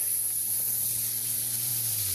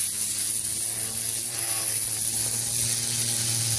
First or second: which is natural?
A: second